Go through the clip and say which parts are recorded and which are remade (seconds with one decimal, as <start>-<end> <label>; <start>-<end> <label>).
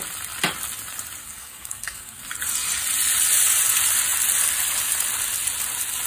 0.0-1.2 recorded; 1.2-2.2 remade; 2.2-6.1 recorded